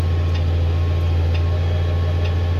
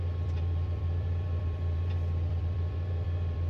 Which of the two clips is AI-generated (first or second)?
second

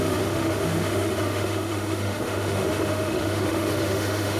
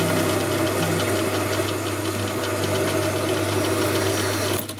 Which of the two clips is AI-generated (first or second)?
first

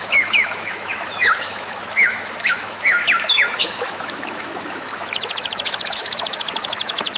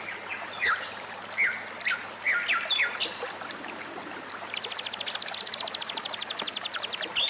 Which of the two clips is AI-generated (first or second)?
first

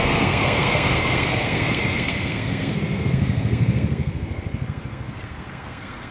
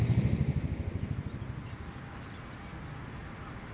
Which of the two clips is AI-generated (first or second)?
first